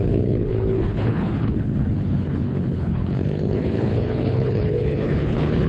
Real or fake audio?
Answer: fake